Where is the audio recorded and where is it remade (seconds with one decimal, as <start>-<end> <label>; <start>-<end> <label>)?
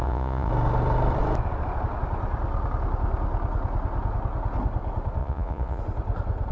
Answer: 0.0-0.5 remade; 0.5-5.2 recorded; 5.2-5.8 remade; 5.8-6.5 recorded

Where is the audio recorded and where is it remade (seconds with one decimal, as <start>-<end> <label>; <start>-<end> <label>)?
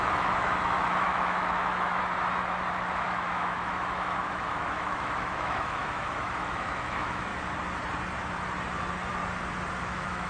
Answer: 0.0-2.0 remade; 2.0-2.7 recorded; 2.7-7.3 remade; 7.3-9.8 recorded; 9.8-10.3 remade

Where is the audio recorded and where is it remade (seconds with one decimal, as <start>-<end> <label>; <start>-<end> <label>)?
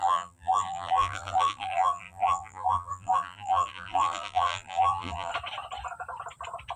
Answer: 0.0-5.3 remade; 5.3-6.8 recorded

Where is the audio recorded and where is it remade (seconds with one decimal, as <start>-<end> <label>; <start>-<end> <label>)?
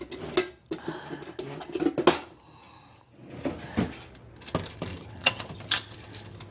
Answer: 0.0-4.9 recorded; 4.9-5.5 remade; 5.5-6.5 recorded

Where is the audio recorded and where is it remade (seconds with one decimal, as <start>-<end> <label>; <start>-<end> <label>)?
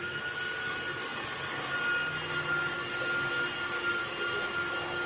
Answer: 0.0-5.1 recorded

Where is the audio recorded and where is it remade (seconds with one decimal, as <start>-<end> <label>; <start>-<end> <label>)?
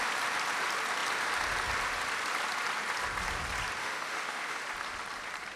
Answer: 0.0-3.8 recorded; 3.8-4.6 remade; 4.6-5.6 recorded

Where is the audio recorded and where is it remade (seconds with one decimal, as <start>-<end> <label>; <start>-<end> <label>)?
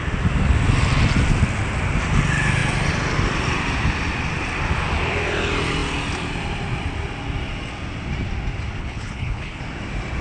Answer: 0.0-8.8 recorded; 8.8-9.6 remade; 9.6-10.2 recorded